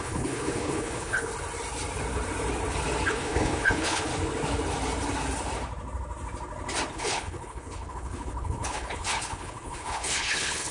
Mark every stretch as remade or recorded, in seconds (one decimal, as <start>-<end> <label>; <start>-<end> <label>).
0.0-1.3 remade; 1.3-3.1 recorded; 3.1-4.1 remade; 4.1-6.9 recorded; 6.9-10.7 remade

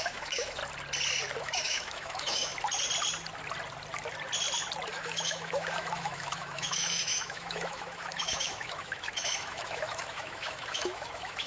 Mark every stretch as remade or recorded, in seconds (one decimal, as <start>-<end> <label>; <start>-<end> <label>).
0.0-0.6 remade; 0.6-1.4 recorded; 1.4-2.5 remade; 2.5-4.9 recorded; 4.9-11.5 remade

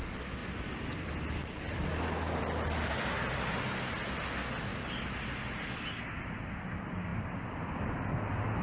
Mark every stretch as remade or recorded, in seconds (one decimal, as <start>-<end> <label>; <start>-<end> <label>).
0.0-0.4 recorded; 0.4-3.3 remade; 3.3-7.1 recorded; 7.1-7.9 remade; 7.9-8.6 recorded

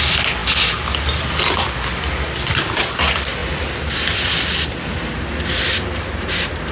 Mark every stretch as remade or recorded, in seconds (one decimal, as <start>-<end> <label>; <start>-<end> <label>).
0.0-6.7 recorded

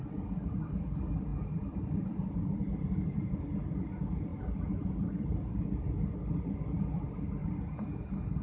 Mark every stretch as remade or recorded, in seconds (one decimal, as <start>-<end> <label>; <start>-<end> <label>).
0.0-1.3 recorded; 1.3-3.4 remade; 3.4-7.4 recorded; 7.4-8.4 remade

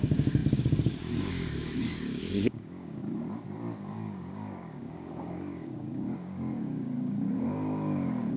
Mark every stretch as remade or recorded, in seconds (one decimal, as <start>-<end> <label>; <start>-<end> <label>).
0.0-3.0 remade; 3.0-3.8 recorded; 3.8-8.4 remade

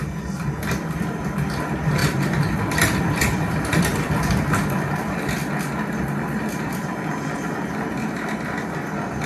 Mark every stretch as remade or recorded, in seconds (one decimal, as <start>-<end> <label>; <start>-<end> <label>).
0.0-2.0 recorded; 2.0-4.9 remade; 4.9-9.3 recorded